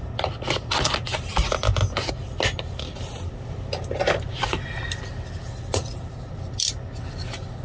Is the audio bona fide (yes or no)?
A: yes